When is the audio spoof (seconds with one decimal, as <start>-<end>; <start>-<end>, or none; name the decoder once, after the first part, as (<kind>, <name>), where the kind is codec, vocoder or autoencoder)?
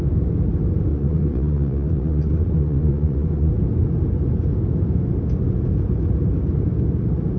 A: 0.9-3.5 (vocoder, Vocos)